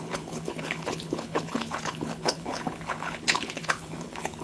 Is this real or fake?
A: fake